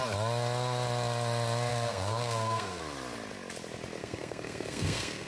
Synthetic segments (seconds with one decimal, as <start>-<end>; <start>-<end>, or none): 1.7-2.8; 4.0-5.3